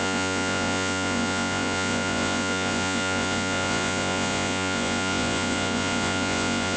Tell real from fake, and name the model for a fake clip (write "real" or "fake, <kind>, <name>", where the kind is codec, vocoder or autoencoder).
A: fake, vocoder, Vocos